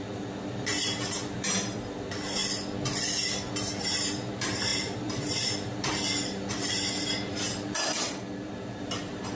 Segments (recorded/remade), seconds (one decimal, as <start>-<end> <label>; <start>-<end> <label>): 0.0-2.4 remade; 2.4-3.8 recorded; 3.8-9.4 remade